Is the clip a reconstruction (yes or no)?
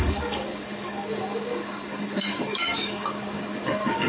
yes